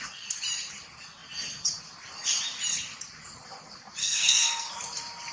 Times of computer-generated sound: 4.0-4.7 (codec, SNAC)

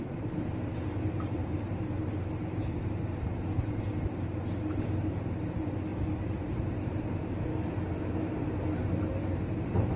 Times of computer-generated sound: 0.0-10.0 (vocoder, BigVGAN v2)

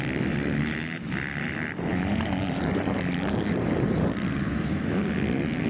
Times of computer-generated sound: 1.9-4.9 (vocoder, BigVGAN v2)